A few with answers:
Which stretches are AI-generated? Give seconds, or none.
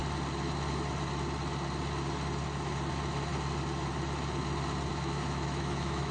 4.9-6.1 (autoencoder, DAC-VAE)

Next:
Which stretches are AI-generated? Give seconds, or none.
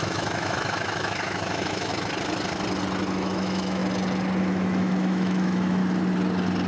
0.0-1.9 (autoencoder, DAC-VAE); 3.1-3.8; 4.4-5.8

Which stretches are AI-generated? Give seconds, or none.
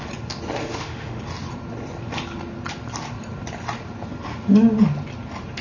0.6-1.2 (autoencoder, DAC-VAE)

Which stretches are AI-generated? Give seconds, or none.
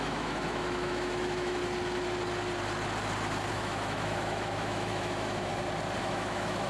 0.0-1.6 (autoencoder, DAC-VAE); 3.5-5.5; 6.0-6.7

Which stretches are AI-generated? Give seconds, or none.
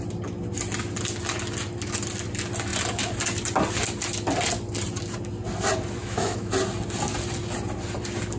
6.0-6.5 (autoencoder, DAC-VAE)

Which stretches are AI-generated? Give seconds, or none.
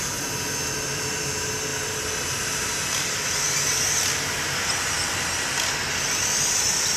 none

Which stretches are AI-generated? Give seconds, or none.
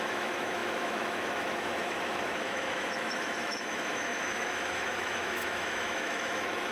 0.0-6.7 (autoencoder, DAC-VAE)